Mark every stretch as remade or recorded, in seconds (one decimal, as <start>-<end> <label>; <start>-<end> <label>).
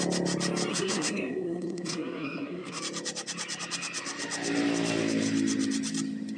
0.0-0.7 recorded; 0.7-2.8 remade; 2.8-6.4 recorded